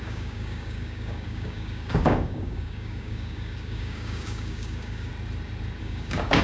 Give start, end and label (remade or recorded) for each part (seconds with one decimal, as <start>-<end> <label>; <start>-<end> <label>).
0.0-5.1 remade; 5.1-5.8 recorded; 5.8-6.4 remade

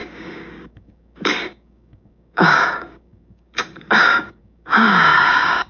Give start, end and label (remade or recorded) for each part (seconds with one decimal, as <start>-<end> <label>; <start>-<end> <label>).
0.0-5.7 remade

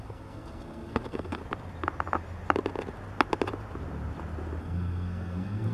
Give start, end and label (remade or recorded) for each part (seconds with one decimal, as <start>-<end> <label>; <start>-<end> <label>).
0.0-1.4 remade; 1.4-4.6 recorded; 4.6-5.7 remade

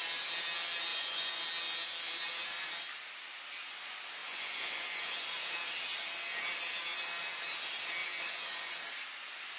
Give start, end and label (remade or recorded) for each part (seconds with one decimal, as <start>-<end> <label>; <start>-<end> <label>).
0.0-0.9 recorded; 0.9-1.4 remade; 1.4-4.2 recorded; 4.2-5.5 remade; 5.5-8.0 recorded; 8.0-8.8 remade; 8.8-9.6 recorded

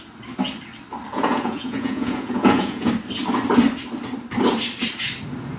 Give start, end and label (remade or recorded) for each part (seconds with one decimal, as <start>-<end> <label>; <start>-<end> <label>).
0.0-1.1 recorded; 1.1-2.9 remade; 2.9-5.6 recorded